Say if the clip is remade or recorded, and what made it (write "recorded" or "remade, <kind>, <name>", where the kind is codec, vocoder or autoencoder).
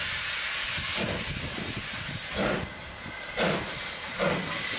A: recorded